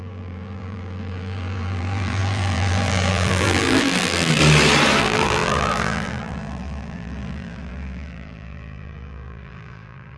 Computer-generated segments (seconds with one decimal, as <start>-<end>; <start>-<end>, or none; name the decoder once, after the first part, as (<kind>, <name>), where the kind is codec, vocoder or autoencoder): 0.0-4.4 (vocoder, BigVGAN v2); 5.0-10.2